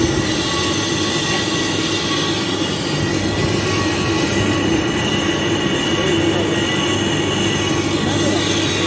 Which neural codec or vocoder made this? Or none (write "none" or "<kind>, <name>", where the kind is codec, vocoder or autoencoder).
none